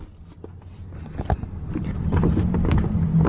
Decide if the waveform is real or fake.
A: real